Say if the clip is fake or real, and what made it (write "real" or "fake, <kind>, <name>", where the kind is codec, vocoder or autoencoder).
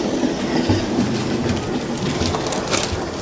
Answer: real